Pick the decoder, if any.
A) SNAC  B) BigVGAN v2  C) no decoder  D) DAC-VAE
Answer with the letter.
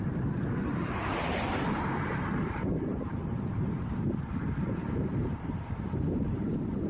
B